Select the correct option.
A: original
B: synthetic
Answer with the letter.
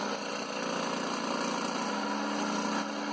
A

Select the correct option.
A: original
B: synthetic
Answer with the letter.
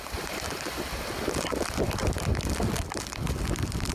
B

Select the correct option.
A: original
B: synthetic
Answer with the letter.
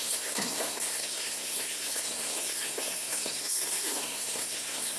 B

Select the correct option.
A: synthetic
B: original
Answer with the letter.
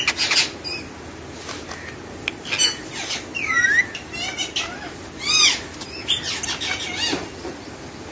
B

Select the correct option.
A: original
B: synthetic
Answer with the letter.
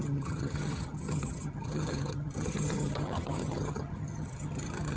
B